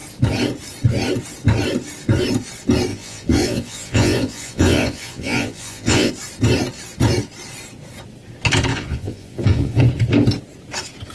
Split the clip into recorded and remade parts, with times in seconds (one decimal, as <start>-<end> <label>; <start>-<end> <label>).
0.0-2.9 recorded; 2.9-6.1 remade; 6.1-8.7 recorded; 8.7-9.8 remade; 9.8-11.1 recorded